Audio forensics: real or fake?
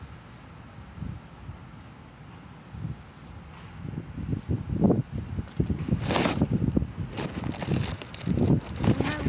real